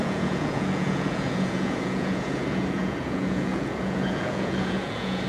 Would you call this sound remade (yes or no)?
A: yes